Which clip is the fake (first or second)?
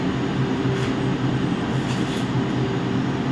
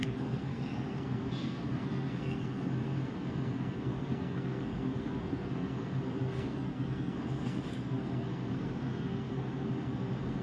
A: second